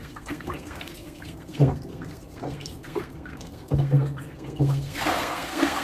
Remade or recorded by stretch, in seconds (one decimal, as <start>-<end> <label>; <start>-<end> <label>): 0.0-5.8 remade